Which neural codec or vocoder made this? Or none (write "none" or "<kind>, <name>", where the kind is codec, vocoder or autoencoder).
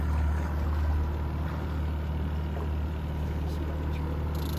none